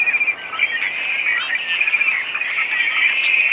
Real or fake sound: real